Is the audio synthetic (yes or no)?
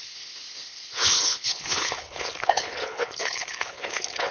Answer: yes